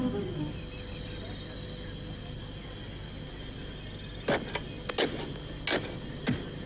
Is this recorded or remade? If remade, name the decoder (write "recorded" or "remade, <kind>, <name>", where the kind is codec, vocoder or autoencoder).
recorded